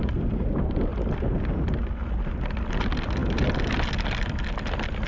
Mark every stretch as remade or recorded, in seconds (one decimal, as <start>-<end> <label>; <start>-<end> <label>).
0.0-5.1 recorded